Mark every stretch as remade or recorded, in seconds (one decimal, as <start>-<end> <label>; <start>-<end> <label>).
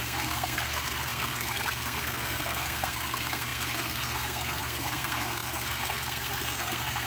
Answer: 0.0-7.1 remade